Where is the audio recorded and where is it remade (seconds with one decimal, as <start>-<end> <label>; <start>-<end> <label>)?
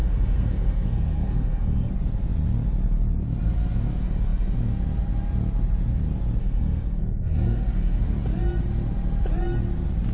0.0-1.9 remade; 1.9-6.4 recorded; 6.4-8.0 remade; 8.0-10.1 recorded